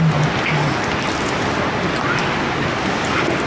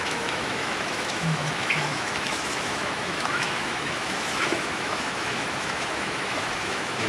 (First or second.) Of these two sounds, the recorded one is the first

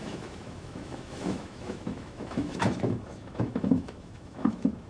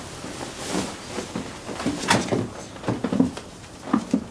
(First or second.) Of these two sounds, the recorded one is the second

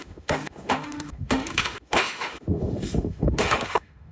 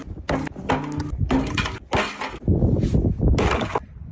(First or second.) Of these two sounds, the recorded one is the second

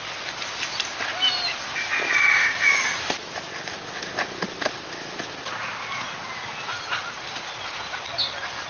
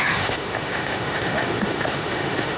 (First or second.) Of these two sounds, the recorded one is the first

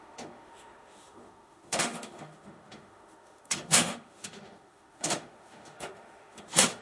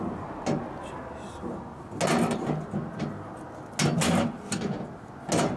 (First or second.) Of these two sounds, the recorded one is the second